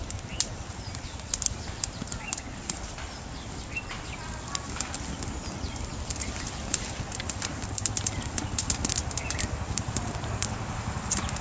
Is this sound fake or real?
real